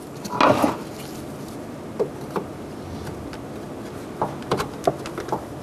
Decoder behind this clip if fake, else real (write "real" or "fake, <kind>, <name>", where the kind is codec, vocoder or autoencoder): real